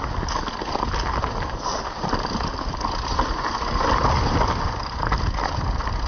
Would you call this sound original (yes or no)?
yes